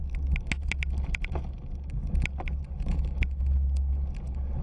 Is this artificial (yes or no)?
no